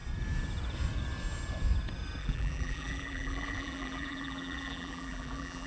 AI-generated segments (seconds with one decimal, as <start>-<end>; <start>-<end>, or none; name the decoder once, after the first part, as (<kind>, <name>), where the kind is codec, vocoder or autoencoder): 2.2-5.7 (vocoder, BigVGAN v2)